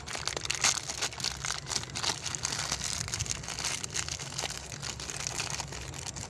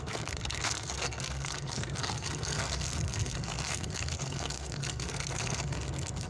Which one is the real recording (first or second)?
first